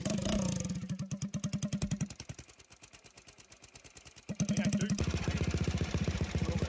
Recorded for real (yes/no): yes